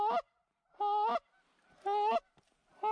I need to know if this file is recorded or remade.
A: recorded